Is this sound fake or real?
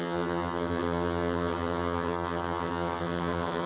fake